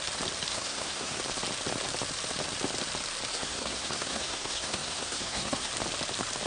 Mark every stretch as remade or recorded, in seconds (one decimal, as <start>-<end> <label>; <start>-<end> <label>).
0.0-0.5 recorded; 0.5-1.2 remade; 1.2-3.3 recorded; 3.3-5.7 remade; 5.7-6.5 recorded